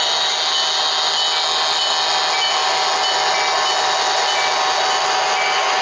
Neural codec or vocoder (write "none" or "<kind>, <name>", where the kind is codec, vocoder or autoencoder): none